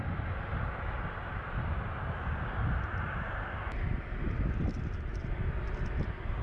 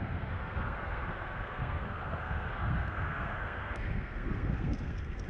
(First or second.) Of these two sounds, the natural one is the first